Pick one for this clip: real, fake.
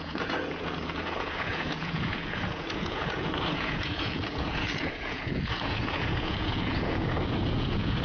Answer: fake